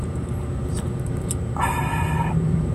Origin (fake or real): fake